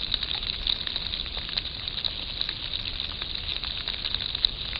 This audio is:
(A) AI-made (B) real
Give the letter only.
B